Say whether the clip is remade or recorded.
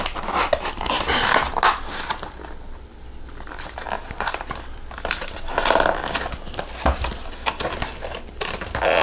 recorded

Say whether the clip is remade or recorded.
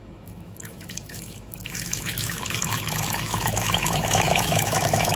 remade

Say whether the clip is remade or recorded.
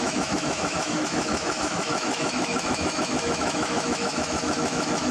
remade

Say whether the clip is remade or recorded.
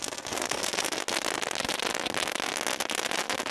recorded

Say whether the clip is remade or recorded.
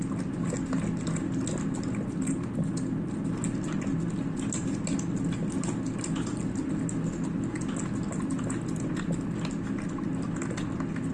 recorded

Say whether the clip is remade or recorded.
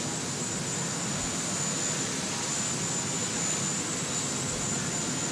recorded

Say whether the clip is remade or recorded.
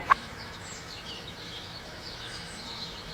remade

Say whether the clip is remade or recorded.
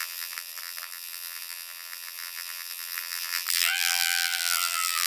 remade